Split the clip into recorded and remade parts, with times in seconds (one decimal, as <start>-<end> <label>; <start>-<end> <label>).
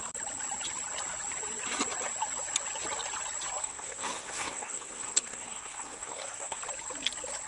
0.0-3.6 recorded; 3.6-6.6 remade; 6.6-7.5 recorded